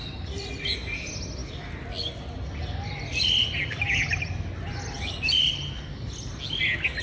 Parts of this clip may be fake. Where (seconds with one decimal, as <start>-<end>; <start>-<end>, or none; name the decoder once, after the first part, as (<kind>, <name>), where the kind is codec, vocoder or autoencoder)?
none